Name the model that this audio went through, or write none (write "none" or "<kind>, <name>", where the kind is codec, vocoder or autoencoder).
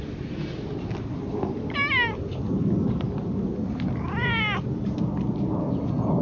none